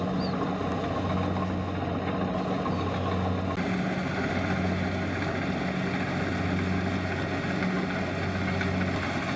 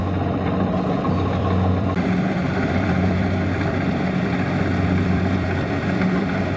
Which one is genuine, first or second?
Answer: first